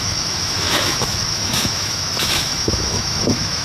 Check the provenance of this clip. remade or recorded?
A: remade